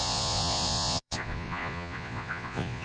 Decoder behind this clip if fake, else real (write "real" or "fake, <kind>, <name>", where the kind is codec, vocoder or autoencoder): fake, vocoder, Vocos